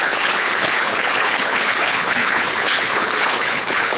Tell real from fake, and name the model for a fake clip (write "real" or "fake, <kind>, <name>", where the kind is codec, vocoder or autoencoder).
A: fake, codec, HILCodec